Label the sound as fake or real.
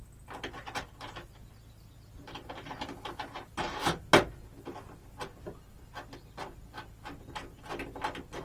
real